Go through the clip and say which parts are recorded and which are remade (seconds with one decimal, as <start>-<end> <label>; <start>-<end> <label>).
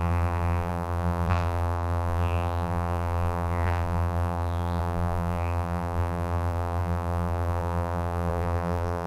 0.0-9.1 remade